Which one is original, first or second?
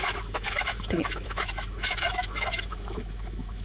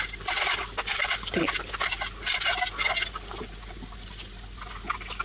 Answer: second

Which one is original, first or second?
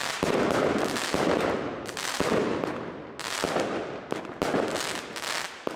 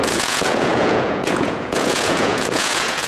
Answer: first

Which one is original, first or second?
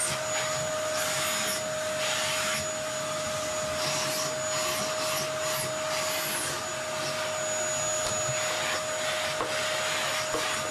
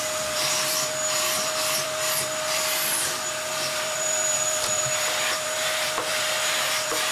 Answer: first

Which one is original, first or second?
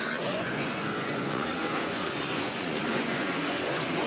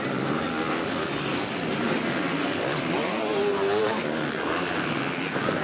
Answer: second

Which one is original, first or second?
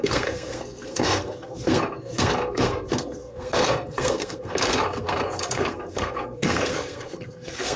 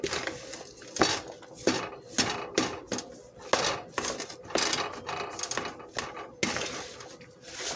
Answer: second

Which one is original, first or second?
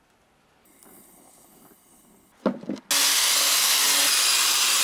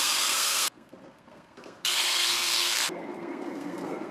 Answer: first